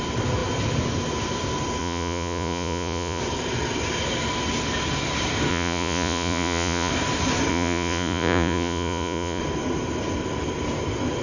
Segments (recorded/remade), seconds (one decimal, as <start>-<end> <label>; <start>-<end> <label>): 0.0-1.8 recorded; 1.8-3.2 remade; 3.2-5.5 recorded; 5.5-6.9 remade; 6.9-7.5 recorded; 7.5-9.4 remade; 9.4-11.2 recorded